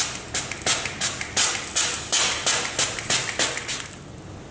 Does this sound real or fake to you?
real